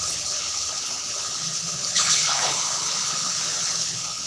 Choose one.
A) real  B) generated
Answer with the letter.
B